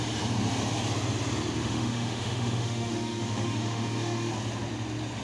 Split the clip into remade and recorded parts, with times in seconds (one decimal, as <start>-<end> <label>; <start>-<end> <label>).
0.0-1.6 recorded; 1.6-4.3 remade; 4.3-5.2 recorded